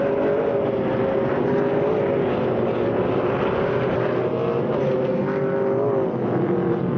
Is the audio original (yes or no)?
yes